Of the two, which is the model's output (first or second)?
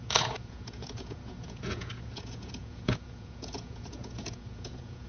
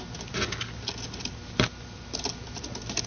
first